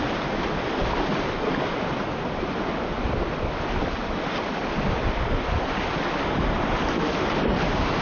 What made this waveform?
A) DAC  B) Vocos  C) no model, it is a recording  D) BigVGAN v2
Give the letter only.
D